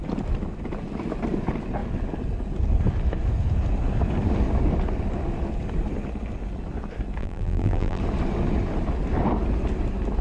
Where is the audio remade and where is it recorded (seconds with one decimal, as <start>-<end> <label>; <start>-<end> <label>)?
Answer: 0.0-7.2 recorded; 7.2-8.0 remade; 8.0-10.2 recorded